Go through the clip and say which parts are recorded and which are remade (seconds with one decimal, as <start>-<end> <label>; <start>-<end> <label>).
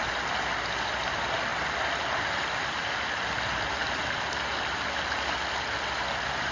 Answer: 0.0-6.5 recorded